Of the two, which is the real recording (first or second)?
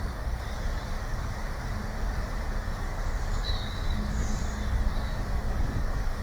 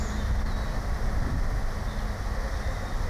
second